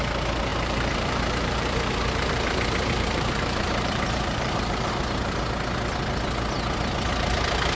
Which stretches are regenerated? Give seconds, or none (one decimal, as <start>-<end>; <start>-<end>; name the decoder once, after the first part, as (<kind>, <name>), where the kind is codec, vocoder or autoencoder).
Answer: 0.5-4.9 (vocoder, BigVGAN v2)